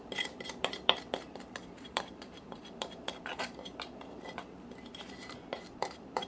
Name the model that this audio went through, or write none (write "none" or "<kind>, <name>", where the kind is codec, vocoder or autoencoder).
vocoder, BigVGAN v2